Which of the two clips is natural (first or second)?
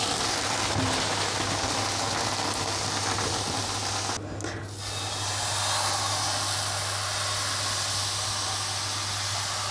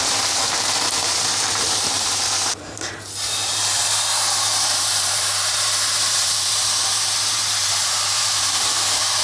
first